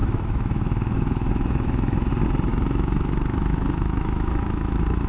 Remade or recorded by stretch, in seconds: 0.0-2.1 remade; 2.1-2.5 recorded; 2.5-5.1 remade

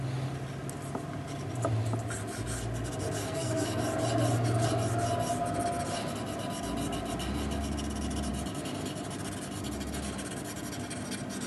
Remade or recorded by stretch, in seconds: 0.0-3.2 recorded; 3.2-3.8 remade; 3.8-11.5 recorded

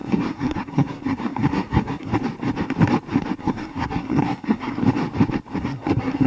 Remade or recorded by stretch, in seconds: 0.0-2.1 remade; 2.1-3.4 recorded; 3.4-4.8 remade; 4.8-5.6 recorded; 5.6-6.3 remade

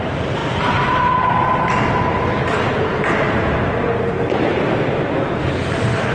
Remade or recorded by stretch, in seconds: 0.0-6.1 recorded

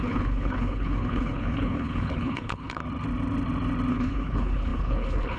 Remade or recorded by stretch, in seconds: 0.0-2.8 remade; 2.8-3.9 recorded; 3.9-5.4 remade

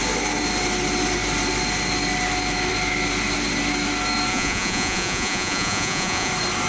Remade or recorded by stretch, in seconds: 0.0-4.3 recorded; 4.3-6.3 remade; 6.3-6.7 recorded

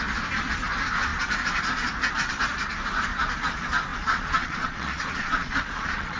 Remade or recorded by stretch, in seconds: 0.0-3.9 recorded; 3.9-6.2 remade